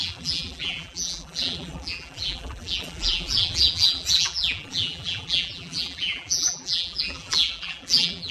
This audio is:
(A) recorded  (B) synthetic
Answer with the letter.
B